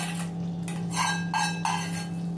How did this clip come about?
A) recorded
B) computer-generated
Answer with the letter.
A